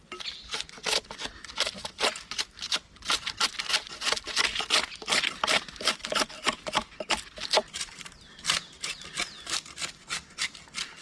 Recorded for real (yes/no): yes